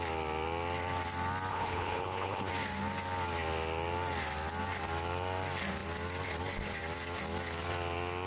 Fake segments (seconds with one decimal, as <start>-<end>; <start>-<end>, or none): 1.5-2.5